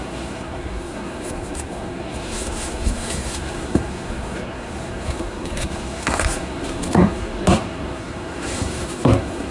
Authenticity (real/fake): fake